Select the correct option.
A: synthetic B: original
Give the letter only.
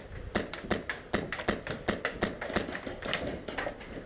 B